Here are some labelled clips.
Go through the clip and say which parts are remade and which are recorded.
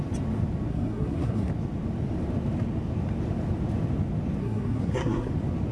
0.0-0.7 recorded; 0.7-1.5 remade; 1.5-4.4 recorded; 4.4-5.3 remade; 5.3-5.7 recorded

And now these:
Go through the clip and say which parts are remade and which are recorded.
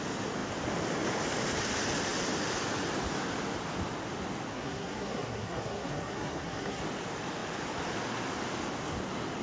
0.0-4.5 recorded; 4.5-6.8 remade; 6.8-9.4 recorded